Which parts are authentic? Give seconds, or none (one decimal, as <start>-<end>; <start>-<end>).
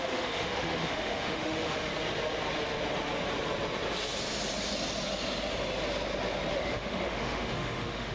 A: 1.9-6.5